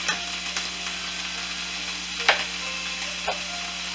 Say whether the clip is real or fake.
real